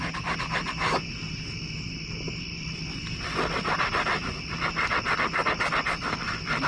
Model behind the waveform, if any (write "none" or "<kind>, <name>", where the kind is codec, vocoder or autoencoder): none